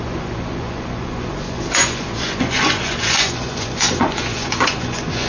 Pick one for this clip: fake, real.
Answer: fake